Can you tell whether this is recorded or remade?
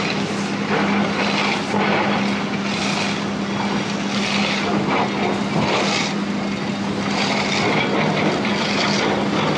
recorded